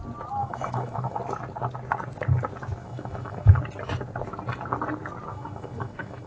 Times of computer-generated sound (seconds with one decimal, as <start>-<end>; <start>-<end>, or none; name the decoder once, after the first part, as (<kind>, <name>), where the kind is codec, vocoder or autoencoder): 0.4-1.2 (autoencoder, DAC-VAE); 2.8-3.6; 5.3-6.3